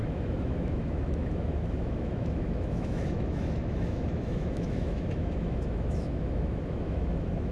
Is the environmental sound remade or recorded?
remade